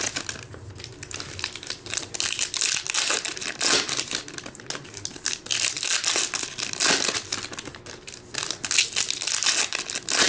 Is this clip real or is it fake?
real